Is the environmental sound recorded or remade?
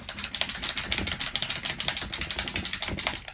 recorded